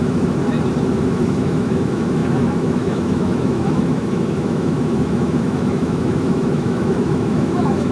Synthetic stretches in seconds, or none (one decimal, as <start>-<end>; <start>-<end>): 0.0-0.4; 1.0-7.9